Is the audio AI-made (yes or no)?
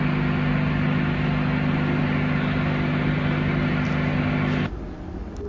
no